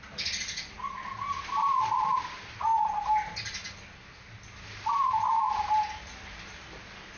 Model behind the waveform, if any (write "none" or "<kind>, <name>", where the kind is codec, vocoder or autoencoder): none